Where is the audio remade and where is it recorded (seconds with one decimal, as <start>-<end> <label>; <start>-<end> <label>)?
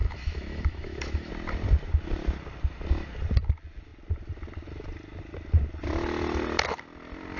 0.0-1.3 remade; 1.3-7.4 recorded